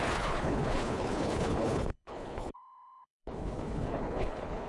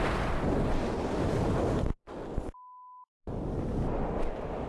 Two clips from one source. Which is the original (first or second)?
second